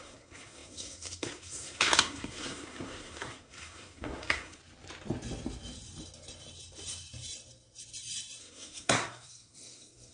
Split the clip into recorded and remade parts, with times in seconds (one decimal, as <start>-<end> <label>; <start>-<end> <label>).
0.0-4.6 remade; 4.6-8.4 recorded; 8.4-10.1 remade